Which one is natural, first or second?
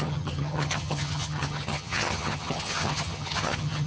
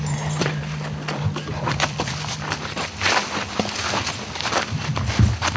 second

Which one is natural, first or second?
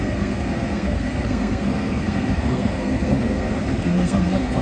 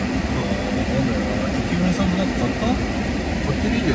second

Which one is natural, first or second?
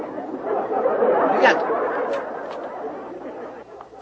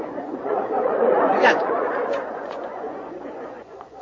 first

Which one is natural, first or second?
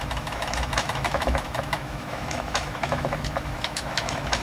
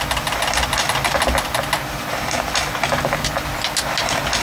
second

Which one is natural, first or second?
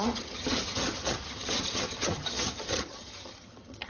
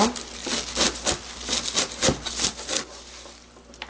second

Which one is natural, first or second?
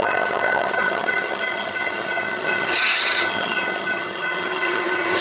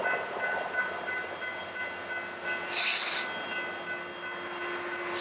second